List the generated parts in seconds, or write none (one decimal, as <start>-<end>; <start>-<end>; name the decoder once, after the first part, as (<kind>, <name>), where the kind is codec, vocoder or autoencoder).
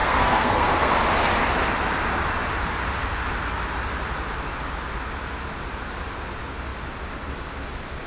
0.0-0.9 (codec, SNAC)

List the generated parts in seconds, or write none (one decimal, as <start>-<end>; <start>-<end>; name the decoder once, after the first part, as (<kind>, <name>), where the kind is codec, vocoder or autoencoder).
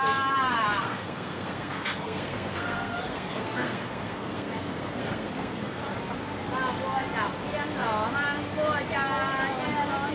0.8-5.8 (codec, SNAC)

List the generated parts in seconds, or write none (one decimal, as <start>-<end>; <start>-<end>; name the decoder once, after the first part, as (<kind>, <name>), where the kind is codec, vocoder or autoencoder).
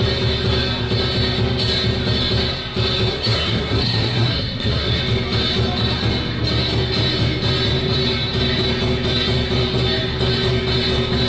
3.1-5.0 (codec, SNAC)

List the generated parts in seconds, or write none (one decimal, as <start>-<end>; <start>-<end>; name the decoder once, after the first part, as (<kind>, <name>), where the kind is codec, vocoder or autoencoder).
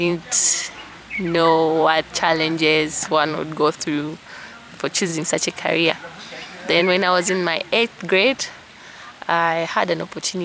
0.0-6.8 (vocoder, BigVGAN v2); 8.4-10.4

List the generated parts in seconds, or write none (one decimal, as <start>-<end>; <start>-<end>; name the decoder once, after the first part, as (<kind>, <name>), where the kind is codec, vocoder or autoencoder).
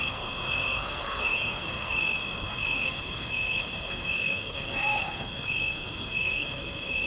0.0-7.1 (codec, SNAC)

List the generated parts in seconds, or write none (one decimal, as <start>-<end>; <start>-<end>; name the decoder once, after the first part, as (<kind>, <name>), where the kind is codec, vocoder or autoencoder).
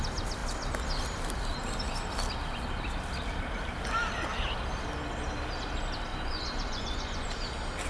6.1-7.3 (vocoder, Vocos)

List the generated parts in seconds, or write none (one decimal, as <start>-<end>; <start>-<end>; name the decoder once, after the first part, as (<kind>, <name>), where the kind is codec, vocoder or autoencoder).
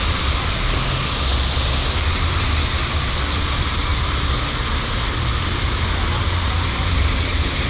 none